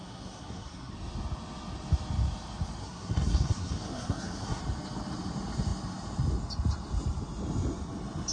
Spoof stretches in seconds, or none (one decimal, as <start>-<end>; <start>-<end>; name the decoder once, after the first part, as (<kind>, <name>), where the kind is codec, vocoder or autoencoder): 0.0-0.9 (codec, SNAC); 2.8-4.6